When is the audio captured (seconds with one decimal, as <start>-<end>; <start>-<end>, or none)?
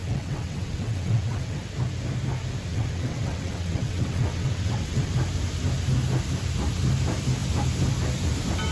1.6-2.7; 5.1-8.7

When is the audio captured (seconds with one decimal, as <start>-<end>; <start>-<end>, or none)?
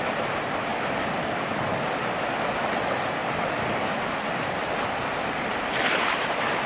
0.0-6.7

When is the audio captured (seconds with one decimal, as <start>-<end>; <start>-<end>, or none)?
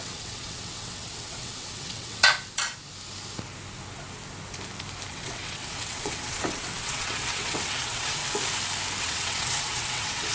2.2-5.1; 8.2-9.0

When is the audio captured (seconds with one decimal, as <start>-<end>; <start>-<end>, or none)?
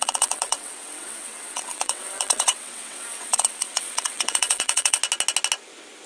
5.0-6.1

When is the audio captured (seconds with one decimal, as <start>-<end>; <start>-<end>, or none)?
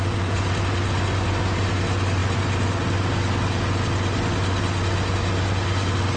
0.0-6.2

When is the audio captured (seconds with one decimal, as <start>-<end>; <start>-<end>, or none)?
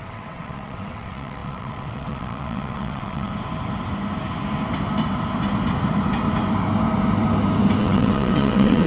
3.3-7.8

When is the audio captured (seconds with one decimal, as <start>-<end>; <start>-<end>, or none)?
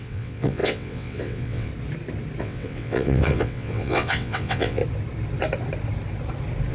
1.7-2.4; 4.8-6.7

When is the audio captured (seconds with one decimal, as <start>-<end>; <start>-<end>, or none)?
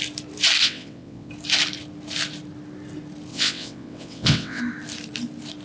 0.0-0.6; 1.3-3.3; 4.6-5.6